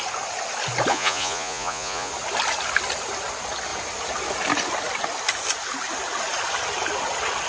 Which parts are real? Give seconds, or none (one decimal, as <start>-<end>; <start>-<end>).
0.0-0.9; 2.1-7.5